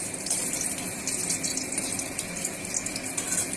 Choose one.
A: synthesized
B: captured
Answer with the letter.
B